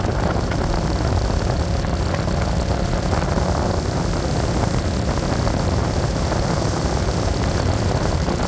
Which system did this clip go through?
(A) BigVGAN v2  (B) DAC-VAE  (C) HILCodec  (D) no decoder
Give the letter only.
D